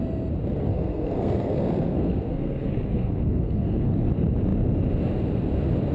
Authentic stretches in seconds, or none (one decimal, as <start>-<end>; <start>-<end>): 0.0-0.6; 4.1-5.9